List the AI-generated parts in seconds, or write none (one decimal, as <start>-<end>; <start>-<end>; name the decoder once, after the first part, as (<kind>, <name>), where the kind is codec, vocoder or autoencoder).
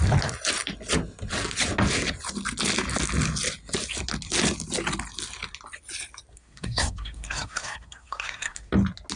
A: 6.3-8.7 (codec, SNAC)